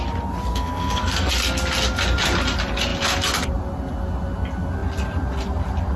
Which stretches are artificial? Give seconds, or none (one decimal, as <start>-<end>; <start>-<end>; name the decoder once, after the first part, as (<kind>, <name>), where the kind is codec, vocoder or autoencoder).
0.5-1.3 (codec, SNAC)